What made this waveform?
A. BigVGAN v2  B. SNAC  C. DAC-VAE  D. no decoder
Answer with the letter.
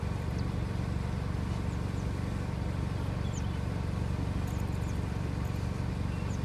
D